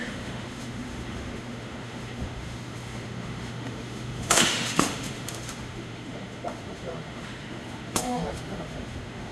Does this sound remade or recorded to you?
remade